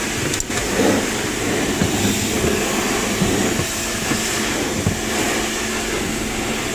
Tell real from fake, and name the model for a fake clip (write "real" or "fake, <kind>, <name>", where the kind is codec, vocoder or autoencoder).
real